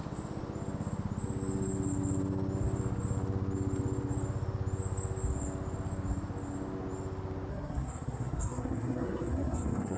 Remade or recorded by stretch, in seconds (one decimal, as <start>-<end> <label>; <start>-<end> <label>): 0.0-7.5 recorded; 7.5-10.0 remade